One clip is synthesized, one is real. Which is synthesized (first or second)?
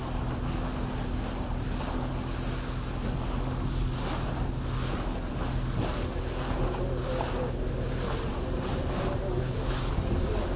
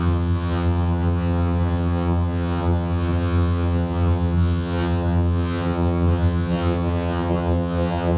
second